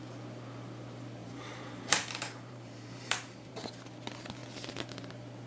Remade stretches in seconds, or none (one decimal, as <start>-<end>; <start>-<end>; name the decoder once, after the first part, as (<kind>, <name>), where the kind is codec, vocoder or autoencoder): 1.2-3.7 (vocoder, BigVGAN v2)